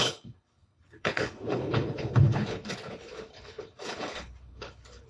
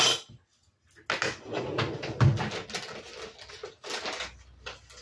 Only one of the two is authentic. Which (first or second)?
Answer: second